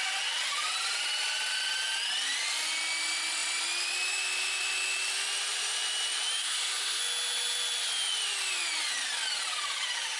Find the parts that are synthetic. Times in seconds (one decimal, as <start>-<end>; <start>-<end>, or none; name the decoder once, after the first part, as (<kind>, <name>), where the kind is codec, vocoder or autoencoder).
6.4-7.0 (codec, SNAC)